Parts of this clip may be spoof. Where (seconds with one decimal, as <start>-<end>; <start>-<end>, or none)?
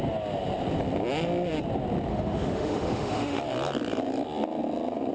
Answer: 2.1-3.4